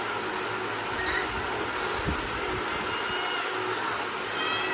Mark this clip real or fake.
real